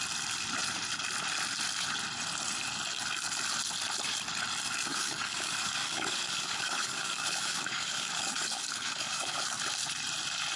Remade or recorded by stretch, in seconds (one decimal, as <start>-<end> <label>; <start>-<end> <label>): 0.0-4.9 recorded; 4.9-9.6 remade; 9.6-10.6 recorded